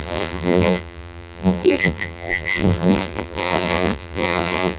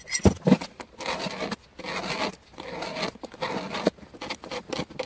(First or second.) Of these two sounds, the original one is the second